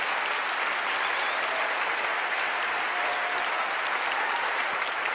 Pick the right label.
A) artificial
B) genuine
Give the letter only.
B